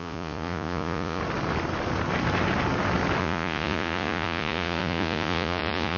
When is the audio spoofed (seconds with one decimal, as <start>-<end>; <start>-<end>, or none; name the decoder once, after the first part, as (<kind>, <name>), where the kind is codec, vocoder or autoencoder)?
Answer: 0.0-1.2 (vocoder, Vocos); 3.2-6.0